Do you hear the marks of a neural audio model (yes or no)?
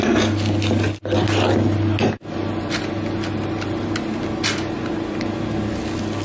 no